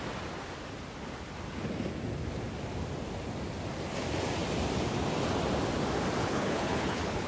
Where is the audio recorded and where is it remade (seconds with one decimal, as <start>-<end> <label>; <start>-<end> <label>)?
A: 0.0-6.2 recorded; 6.2-7.3 remade